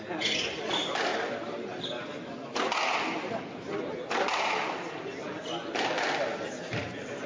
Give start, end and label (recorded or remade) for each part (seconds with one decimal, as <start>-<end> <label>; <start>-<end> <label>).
0.0-7.3 recorded